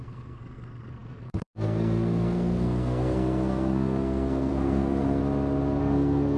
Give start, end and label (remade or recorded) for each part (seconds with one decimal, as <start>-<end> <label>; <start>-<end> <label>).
0.0-5.2 remade; 5.2-5.8 recorded; 5.8-6.4 remade